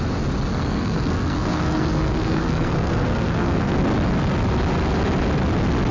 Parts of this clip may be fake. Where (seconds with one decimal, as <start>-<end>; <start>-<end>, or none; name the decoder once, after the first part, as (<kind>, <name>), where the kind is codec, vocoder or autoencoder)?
0.5-3.8 (codec, SNAC)